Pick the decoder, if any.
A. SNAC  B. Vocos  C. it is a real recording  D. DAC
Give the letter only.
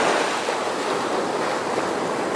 C